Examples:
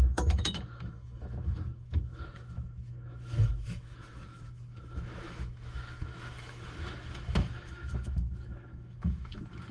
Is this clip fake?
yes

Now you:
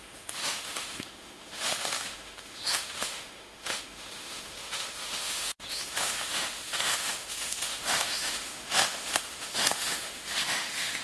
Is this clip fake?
yes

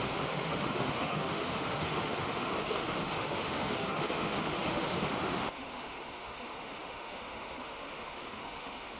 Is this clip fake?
yes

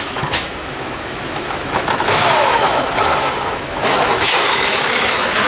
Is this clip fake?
yes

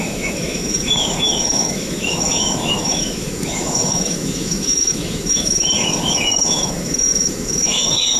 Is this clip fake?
yes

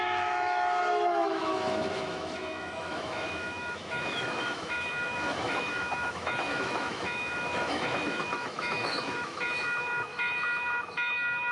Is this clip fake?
yes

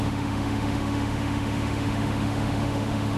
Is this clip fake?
yes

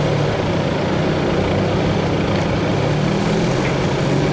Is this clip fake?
no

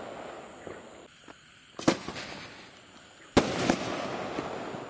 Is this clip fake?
no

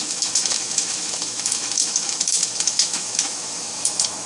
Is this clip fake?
yes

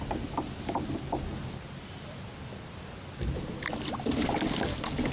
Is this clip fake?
no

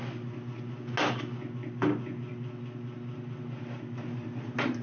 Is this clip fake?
no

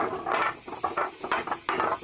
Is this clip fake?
no